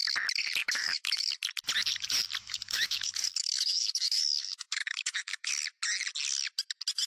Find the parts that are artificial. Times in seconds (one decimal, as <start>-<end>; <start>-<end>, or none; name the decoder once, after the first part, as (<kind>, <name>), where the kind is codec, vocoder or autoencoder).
0.6-1.3 (autoencoder, DAC-VAE); 2.4-5.5